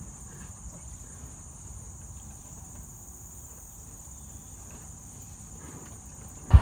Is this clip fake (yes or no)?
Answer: yes